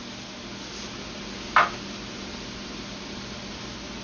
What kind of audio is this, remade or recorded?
recorded